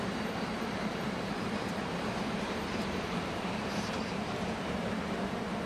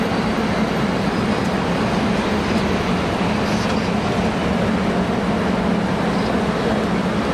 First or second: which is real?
second